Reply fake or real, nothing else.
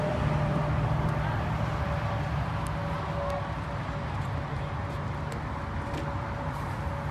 real